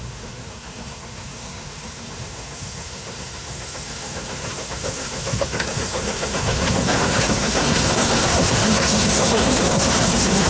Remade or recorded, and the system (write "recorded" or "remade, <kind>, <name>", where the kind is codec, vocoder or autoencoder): remade, codec, SNAC